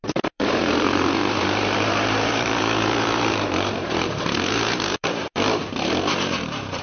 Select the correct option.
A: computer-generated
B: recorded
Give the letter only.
A